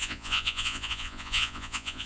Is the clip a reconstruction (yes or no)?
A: yes